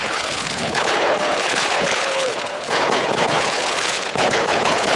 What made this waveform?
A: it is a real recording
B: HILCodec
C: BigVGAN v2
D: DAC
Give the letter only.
B